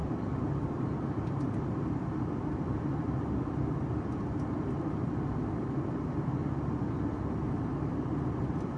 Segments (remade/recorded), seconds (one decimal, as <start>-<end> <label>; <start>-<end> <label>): 0.0-8.8 remade